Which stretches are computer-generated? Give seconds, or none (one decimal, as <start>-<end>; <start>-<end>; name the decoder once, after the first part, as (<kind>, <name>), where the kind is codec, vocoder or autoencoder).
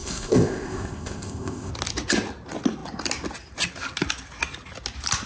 0.0-1.7 (codec, ZipCodec)